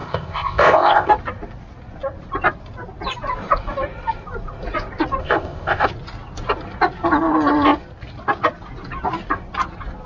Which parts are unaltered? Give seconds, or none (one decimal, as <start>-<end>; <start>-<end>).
1.1-5.2; 5.9-10.1